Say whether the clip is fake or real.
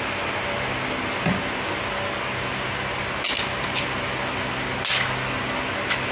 real